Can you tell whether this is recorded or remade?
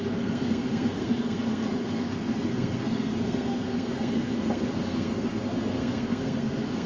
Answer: remade